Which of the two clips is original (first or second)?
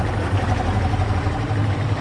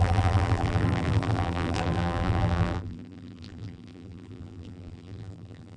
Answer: first